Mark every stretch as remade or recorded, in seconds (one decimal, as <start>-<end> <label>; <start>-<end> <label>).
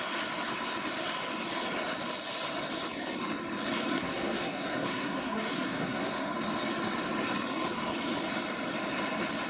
0.0-3.9 recorded; 3.9-6.3 remade; 6.3-9.5 recorded